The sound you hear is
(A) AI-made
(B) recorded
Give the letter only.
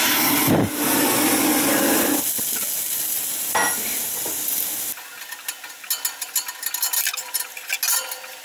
B